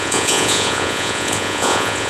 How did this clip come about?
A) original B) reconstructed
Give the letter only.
B